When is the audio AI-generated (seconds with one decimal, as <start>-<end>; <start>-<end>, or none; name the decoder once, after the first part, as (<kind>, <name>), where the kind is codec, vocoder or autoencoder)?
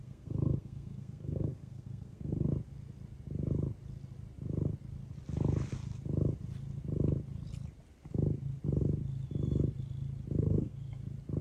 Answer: 0.0-2.5 (codec, SNAC); 10.4-11.0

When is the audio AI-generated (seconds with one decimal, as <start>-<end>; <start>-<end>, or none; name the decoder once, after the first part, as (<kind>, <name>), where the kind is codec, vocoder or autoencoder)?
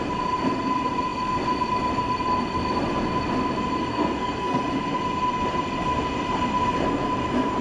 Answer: 3.9-4.6 (codec, SNAC)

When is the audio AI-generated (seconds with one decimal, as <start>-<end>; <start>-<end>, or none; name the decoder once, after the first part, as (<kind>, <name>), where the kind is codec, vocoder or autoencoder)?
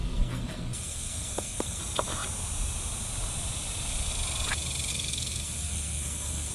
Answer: 0.0-1.8 (codec, SNAC); 4.9-6.5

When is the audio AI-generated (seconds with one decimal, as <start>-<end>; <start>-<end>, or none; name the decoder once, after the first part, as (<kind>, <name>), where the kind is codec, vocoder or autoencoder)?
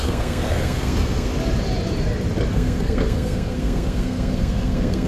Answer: 0.0-1.3 (codec, SNAC); 2.5-5.1